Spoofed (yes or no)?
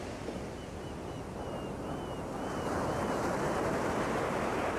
no